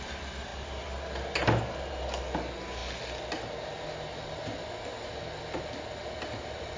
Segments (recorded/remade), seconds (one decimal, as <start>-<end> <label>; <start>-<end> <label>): 0.0-6.8 recorded